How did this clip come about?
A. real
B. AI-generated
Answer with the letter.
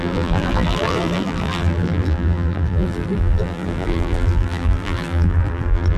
B